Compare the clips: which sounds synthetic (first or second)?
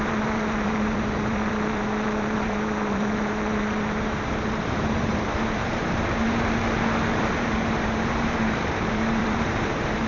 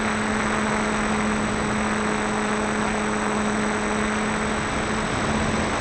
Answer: first